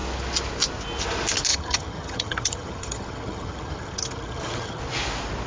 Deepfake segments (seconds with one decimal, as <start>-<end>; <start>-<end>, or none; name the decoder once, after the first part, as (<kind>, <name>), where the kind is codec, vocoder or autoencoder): 1.5-4.8 (vocoder, HiFi-GAN)